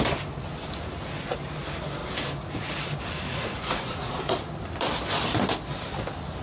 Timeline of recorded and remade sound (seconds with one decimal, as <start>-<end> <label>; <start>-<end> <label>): 0.0-3.3 recorded; 3.3-4.2 remade; 4.2-6.4 recorded